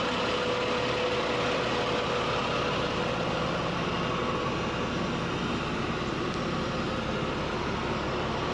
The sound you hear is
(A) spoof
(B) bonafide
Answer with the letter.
B